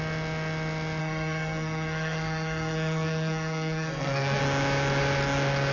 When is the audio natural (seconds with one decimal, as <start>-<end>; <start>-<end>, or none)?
0.0-1.0; 4.4-5.7